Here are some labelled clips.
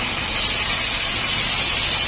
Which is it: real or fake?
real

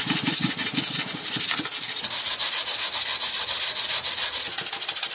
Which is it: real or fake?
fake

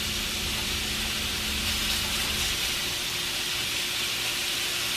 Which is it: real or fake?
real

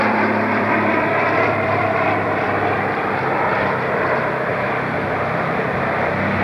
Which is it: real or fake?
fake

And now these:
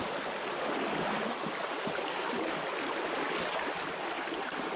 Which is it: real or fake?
real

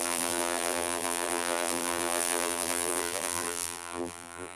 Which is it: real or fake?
fake